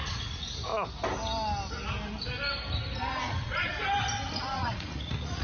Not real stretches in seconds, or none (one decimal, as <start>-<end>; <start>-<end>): 0.0-0.7; 3.2-3.7; 4.5-5.4